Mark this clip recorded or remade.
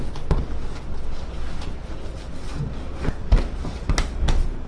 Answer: recorded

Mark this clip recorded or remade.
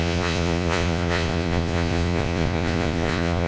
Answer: remade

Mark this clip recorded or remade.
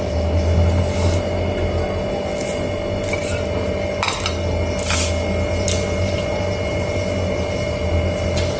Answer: recorded